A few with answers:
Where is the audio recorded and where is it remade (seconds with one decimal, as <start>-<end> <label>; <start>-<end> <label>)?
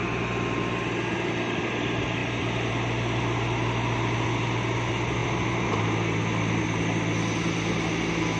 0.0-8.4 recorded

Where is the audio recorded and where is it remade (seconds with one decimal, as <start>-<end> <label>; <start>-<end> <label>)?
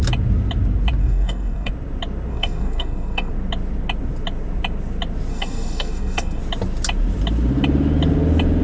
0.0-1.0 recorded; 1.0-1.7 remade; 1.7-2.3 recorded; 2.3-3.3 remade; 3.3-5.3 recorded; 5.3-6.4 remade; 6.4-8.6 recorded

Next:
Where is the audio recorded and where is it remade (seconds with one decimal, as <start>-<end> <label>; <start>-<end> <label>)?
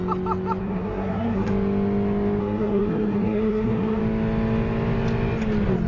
0.0-0.6 recorded; 0.6-1.5 remade; 1.5-2.4 recorded; 2.4-4.0 remade; 4.0-5.9 recorded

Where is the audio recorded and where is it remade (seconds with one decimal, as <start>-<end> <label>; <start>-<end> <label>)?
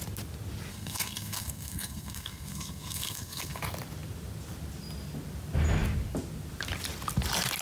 0.0-0.7 recorded; 0.7-3.6 remade; 3.6-7.6 recorded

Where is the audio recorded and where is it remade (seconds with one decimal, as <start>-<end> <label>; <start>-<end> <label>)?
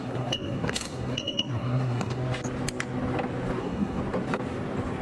0.0-2.2 remade; 2.2-3.6 recorded; 3.6-4.0 remade; 4.0-5.0 recorded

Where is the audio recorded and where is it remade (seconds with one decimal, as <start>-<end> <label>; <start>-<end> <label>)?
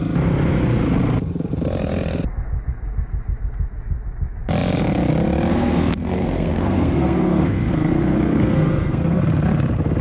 0.0-5.5 recorded; 5.5-9.2 remade; 9.2-10.0 recorded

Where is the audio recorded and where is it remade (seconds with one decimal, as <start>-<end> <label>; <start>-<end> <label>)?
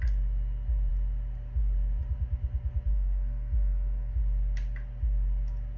0.0-2.9 recorded; 2.9-4.1 remade; 4.1-5.8 recorded